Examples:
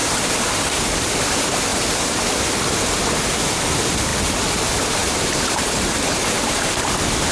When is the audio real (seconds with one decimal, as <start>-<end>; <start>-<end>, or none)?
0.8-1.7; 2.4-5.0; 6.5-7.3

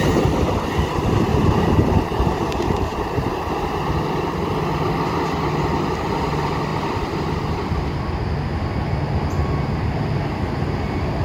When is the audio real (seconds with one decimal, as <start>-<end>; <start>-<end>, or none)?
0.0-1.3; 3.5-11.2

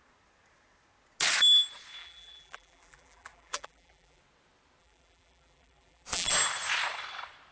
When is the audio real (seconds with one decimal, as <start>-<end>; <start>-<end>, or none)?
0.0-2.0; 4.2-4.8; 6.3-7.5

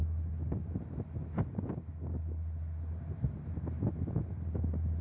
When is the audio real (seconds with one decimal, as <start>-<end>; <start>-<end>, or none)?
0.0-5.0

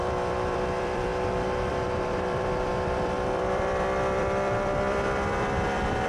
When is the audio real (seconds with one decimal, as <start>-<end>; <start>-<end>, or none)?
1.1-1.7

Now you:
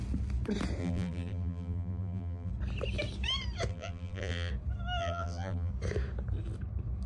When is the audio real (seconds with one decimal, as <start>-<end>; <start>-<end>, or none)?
0.0-0.8; 2.5-3.7; 4.5-5.0; 5.7-7.1

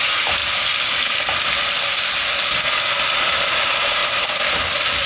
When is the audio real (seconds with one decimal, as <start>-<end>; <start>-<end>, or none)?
0.4-3.5; 4.0-5.1

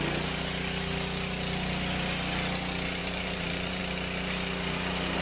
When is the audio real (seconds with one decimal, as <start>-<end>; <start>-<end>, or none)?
0.0-3.0; 3.8-5.2